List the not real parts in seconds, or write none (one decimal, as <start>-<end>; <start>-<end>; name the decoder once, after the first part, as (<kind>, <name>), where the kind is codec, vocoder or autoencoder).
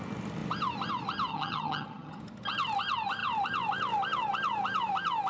1.3-2.2 (vocoder, HiFi-GAN)